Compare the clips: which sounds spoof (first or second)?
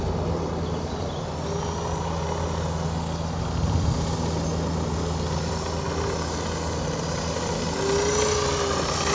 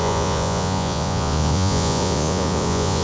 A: second